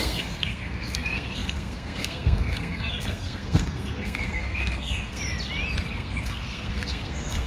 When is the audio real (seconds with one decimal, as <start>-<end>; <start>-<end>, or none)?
5.2-5.9